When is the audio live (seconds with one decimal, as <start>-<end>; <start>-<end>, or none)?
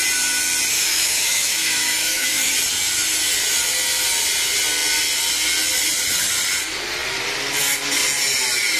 0.0-0.7; 2.5-8.8